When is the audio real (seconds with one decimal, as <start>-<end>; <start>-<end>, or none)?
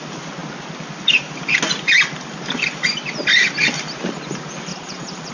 0.0-4.7